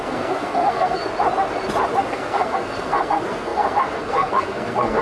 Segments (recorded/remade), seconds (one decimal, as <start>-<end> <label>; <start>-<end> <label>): 0.0-1.0 remade; 1.0-2.1 recorded; 2.1-5.0 remade